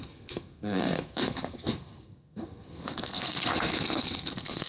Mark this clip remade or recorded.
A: remade